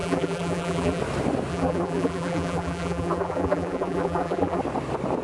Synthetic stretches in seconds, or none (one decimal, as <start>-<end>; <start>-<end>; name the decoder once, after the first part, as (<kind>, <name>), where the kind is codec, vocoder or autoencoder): 0.0-1.0 (vocoder, BigVGAN v2); 1.5-4.6